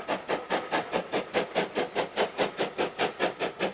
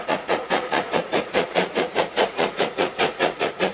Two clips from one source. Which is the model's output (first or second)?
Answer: second